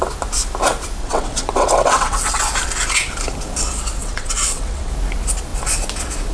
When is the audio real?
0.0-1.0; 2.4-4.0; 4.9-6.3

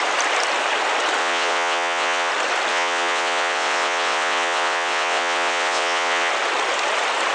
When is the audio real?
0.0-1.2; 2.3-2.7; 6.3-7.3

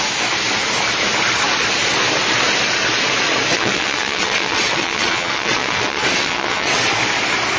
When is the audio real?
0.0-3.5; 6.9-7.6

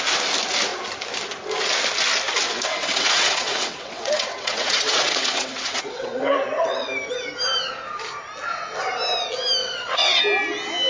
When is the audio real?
0.0-2.7; 6.9-9.6; 10.2-10.9